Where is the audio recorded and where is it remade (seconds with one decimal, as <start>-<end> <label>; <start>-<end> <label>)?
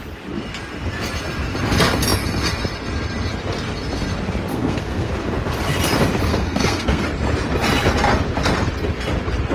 0.0-4.5 recorded; 4.5-5.1 remade; 5.1-6.3 recorded; 6.3-7.0 remade; 7.0-9.5 recorded